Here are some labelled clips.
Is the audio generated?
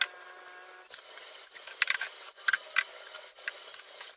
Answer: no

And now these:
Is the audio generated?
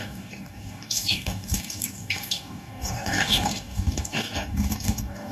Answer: yes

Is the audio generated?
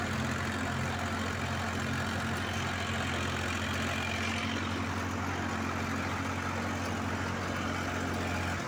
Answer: no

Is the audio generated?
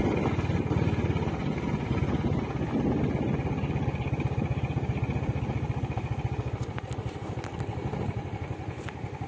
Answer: no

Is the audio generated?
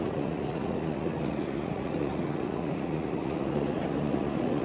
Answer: yes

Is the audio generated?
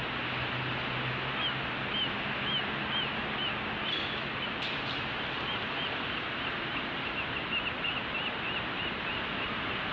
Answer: no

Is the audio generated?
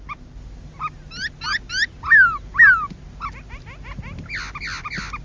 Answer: no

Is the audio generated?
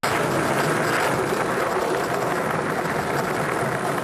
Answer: no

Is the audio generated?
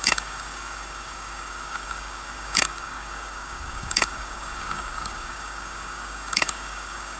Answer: yes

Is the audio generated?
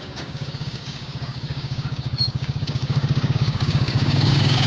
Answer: yes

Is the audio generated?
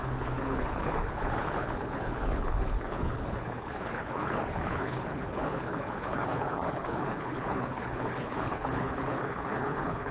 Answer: yes